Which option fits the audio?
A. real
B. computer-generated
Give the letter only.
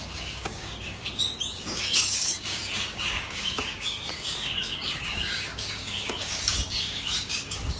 B